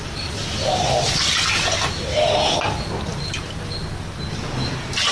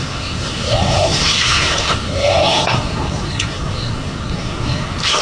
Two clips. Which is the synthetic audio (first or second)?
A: second